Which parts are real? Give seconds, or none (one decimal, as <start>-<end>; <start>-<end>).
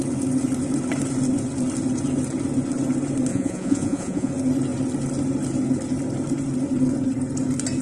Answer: 0.0-3.3; 4.3-7.8